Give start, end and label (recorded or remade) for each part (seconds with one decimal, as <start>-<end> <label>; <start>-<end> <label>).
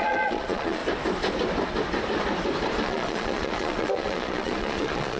0.0-0.8 remade; 0.8-2.8 recorded; 2.8-5.2 remade